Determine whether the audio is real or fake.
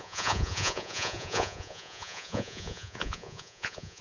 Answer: fake